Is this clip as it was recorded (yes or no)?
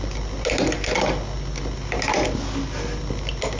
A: yes